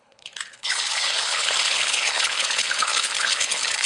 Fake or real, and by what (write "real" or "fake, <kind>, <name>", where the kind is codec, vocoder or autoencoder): fake, codec, HILCodec